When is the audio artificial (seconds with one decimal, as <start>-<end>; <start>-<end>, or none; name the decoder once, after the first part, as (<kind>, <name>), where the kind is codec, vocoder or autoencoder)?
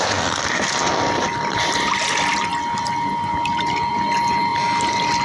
none